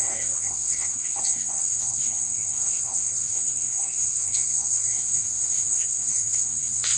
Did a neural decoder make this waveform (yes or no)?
yes